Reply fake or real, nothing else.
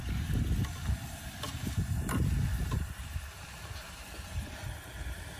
real